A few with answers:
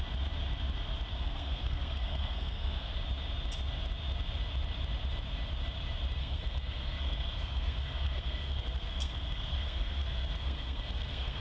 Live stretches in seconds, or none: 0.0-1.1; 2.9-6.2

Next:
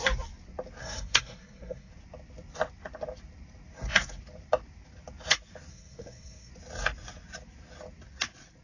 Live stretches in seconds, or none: 0.0-0.8; 1.9-5.7; 6.5-8.6

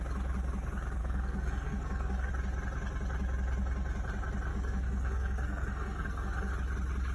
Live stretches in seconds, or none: 0.0-1.0; 2.3-4.5; 6.5-7.1